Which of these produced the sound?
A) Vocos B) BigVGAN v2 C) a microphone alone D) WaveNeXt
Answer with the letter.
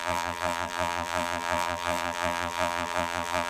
B